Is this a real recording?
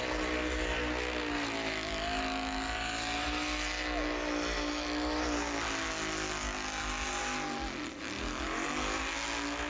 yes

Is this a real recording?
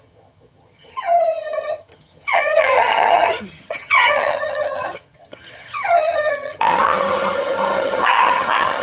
no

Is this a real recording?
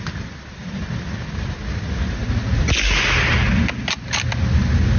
yes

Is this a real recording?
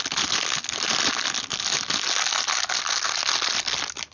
yes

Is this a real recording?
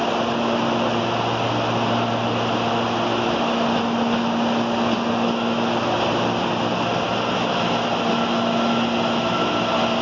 yes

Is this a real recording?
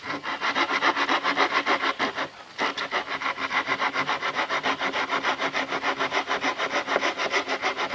yes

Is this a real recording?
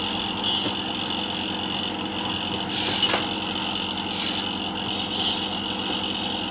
yes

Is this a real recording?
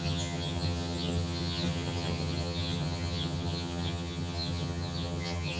no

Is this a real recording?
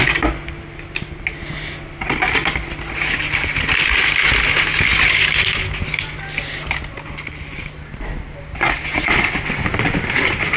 yes